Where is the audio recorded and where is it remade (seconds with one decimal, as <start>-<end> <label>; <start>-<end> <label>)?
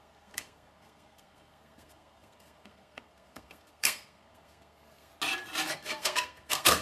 0.0-5.1 remade; 5.1-5.7 recorded; 5.7-6.8 remade